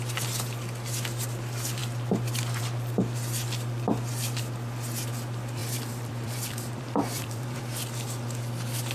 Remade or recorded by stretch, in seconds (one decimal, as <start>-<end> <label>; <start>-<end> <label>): 0.0-5.6 recorded; 5.6-7.6 remade; 7.6-8.9 recorded

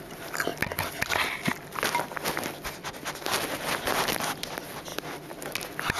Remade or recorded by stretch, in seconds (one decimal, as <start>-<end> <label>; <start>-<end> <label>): 0.0-0.5 remade; 0.5-4.1 recorded; 4.1-4.9 remade; 4.9-6.0 recorded